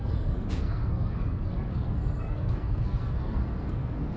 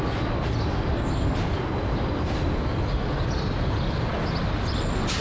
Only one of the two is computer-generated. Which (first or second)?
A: first